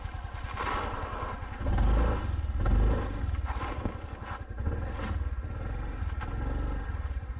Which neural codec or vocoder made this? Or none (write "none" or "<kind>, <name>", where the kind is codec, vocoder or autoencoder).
none